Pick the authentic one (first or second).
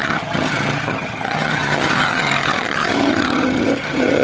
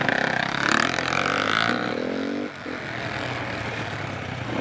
second